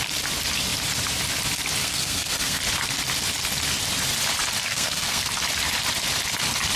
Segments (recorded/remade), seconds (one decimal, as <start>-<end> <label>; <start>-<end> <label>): 0.0-1.8 recorded; 1.8-2.6 remade; 2.6-4.7 recorded; 4.7-5.3 remade; 5.3-6.8 recorded